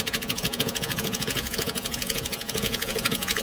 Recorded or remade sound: remade